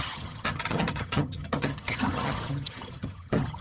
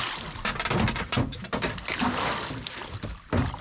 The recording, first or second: second